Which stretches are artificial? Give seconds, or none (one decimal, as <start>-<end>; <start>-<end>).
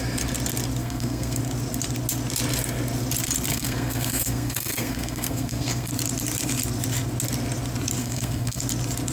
0.8-1.4; 3.5-5.9; 8.0-8.6